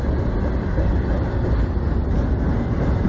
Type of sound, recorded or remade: recorded